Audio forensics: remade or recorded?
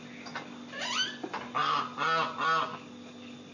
recorded